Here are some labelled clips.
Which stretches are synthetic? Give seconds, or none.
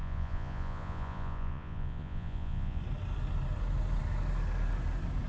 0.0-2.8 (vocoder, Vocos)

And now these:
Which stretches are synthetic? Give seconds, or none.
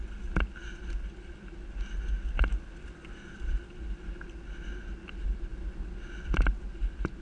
none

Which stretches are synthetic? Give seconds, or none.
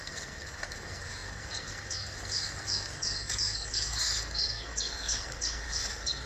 0.0-6.3 (codec, SNAC)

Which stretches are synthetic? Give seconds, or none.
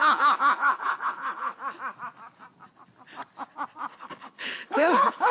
0.0-1.6 (codec, HILCodec); 3.9-5.3